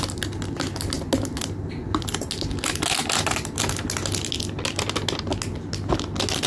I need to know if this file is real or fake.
real